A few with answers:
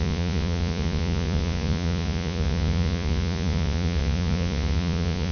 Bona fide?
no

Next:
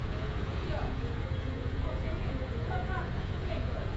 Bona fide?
no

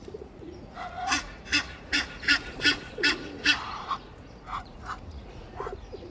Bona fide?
no